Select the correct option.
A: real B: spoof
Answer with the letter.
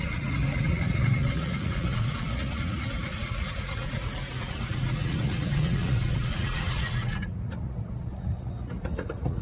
B